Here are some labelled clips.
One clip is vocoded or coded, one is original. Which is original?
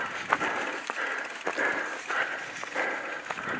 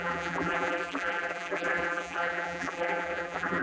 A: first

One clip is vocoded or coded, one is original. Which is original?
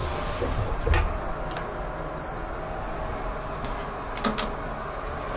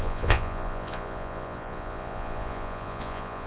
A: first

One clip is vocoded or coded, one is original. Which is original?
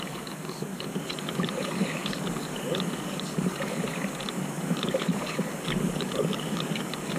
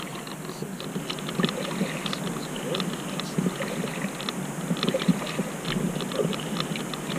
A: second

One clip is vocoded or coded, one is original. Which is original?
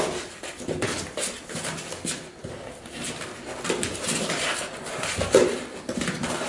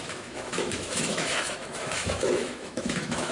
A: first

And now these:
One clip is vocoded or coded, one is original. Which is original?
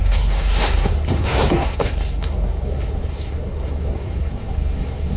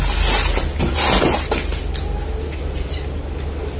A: second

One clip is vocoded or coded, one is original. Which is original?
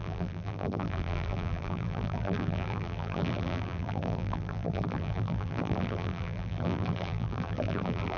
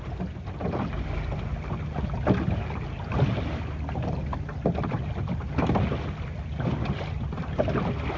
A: second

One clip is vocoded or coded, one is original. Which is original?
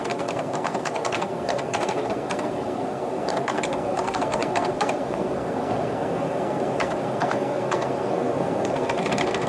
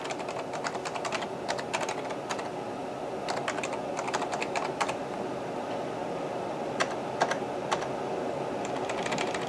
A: second